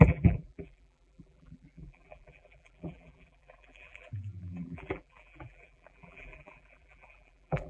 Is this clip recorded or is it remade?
remade